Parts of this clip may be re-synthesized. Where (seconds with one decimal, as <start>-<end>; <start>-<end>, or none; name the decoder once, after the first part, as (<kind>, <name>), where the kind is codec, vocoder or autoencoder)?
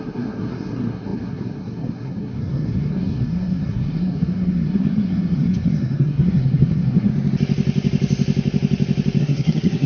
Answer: 0.0-7.1 (codec, SNAC); 9.2-9.9